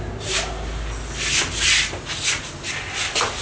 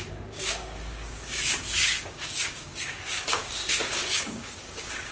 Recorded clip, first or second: first